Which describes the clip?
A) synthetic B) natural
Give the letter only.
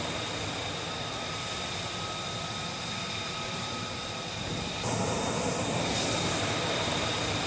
B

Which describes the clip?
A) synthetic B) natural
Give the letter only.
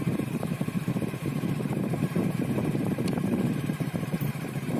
A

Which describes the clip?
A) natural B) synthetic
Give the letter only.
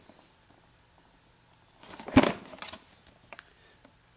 A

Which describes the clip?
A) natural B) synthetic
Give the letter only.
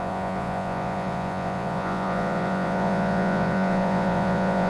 B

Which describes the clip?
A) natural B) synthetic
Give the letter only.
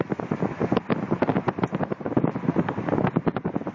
A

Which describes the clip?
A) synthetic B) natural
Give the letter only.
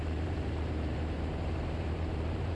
A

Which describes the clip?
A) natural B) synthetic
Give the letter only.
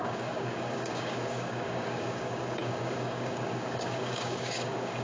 B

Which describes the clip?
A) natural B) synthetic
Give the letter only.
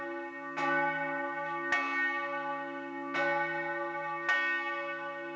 A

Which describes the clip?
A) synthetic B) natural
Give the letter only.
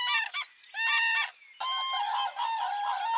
B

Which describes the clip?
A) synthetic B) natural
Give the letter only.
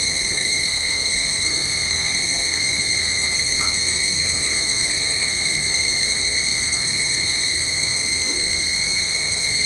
A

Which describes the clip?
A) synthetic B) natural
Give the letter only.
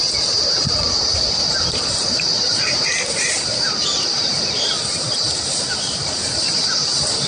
A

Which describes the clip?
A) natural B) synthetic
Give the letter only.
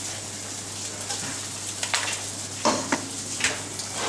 A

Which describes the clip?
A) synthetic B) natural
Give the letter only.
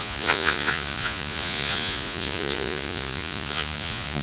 A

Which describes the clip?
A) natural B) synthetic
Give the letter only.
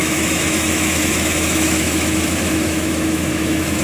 B